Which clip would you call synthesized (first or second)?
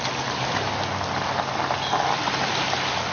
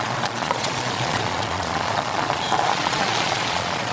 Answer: second